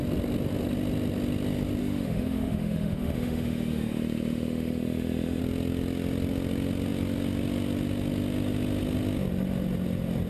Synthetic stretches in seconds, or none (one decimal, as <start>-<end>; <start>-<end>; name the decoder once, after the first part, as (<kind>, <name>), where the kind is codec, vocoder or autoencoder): 1.8-5.4 (autoencoder, DAC-VAE)